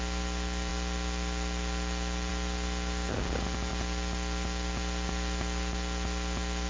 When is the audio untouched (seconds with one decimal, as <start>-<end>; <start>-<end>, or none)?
0.0-6.7